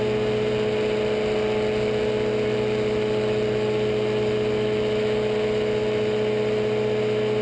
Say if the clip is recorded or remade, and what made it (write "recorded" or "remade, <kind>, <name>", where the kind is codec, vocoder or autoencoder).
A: recorded